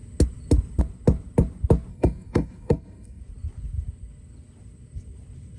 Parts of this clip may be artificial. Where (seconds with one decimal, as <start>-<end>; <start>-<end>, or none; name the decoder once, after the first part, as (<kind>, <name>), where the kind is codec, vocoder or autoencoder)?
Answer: 1.9-3.2 (codec, SNAC)